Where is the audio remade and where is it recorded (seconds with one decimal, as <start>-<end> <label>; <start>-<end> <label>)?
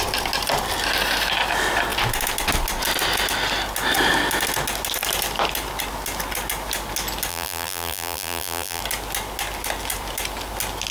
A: 0.0-7.3 recorded; 7.3-8.8 remade; 8.8-10.9 recorded